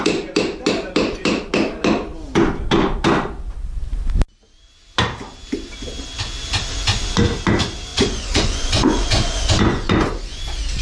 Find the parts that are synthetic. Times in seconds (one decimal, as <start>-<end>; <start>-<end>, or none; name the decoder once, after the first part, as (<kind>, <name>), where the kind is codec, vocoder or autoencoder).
7.9-10.4 (vocoder, Vocos)

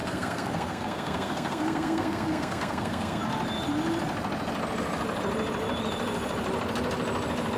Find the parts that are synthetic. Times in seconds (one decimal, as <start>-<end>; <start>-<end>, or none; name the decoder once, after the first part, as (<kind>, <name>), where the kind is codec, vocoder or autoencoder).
0.0-3.2 (codec, SNAC)